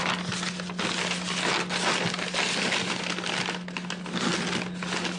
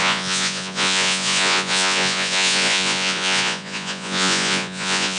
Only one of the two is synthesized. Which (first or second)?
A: second